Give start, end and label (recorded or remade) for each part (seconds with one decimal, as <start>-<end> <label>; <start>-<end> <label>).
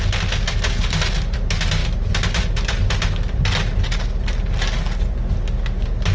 0.0-6.1 recorded